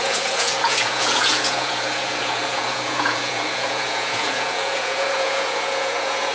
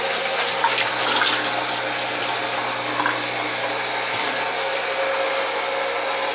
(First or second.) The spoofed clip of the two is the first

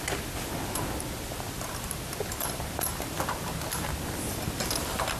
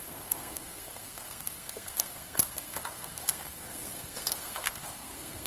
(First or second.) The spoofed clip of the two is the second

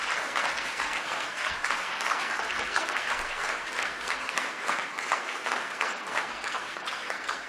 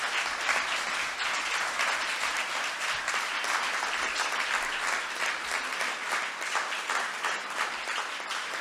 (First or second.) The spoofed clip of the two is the first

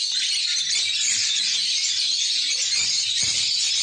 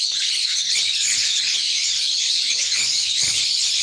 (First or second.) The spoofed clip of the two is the second